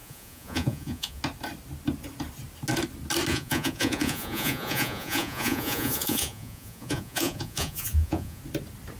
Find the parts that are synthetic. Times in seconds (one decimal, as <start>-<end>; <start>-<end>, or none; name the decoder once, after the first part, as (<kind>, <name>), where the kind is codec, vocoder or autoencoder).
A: 0.0-1.2 (vocoder, Vocos); 3.3-8.4

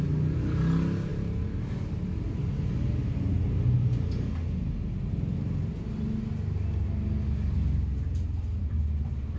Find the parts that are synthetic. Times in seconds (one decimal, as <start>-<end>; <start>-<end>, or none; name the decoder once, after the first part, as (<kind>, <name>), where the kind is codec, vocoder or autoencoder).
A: 8.6-9.4 (vocoder, BigVGAN v2)

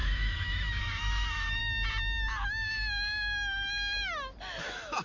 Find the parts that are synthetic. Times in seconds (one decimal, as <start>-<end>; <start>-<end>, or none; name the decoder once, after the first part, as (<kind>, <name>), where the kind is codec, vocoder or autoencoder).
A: 0.0-1.6 (autoencoder, DAC-VAE); 4.6-5.0

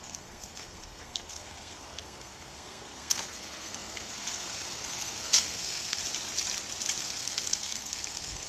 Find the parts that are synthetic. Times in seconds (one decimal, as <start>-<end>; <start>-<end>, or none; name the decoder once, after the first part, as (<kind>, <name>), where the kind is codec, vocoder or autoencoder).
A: 0.0-6.0 (codec, SNAC); 7.0-8.5